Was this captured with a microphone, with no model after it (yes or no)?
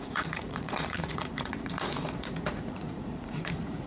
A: no